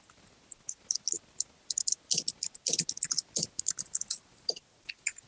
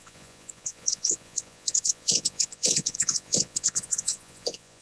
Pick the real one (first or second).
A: first